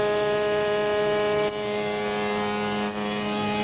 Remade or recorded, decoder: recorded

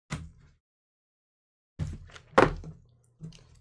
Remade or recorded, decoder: recorded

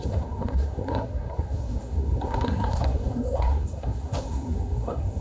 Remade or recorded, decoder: remade, codec, SNAC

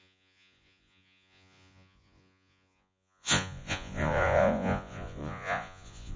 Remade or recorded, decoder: remade, vocoder, Vocos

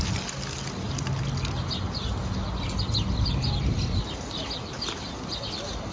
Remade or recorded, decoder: recorded